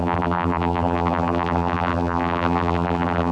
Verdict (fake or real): fake